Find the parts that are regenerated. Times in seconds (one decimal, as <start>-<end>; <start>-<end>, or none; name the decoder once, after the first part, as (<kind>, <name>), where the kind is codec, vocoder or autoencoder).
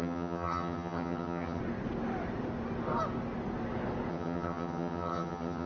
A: 0.0-1.6 (vocoder, HiFi-GAN); 4.1-5.7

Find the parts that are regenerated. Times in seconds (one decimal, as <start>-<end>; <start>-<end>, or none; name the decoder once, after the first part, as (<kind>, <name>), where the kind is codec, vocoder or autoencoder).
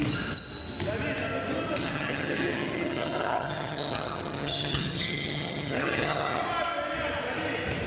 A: 1.8-6.4 (vocoder, HiFi-GAN)